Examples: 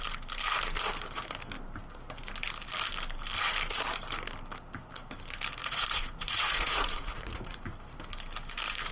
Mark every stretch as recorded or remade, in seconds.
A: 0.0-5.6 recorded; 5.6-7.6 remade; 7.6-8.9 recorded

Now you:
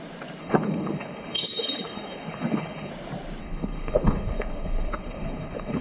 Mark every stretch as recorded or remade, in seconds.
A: 0.0-0.4 recorded; 0.4-2.9 remade; 2.9-3.4 recorded; 3.4-5.8 remade

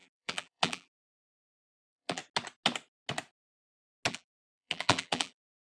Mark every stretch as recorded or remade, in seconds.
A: 0.0-2.2 remade; 2.2-4.1 recorded; 4.1-5.6 remade

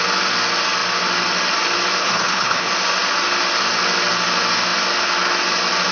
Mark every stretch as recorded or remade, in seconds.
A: 0.0-2.0 recorded; 2.0-2.7 remade; 2.7-5.9 recorded

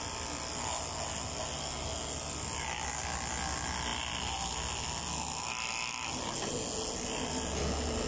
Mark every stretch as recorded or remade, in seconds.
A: 0.0-8.1 recorded